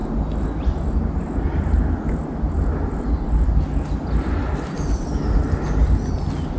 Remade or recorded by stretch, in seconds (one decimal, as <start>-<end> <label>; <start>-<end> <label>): 0.0-6.6 recorded